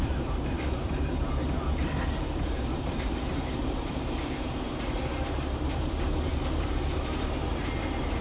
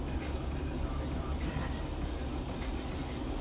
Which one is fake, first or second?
first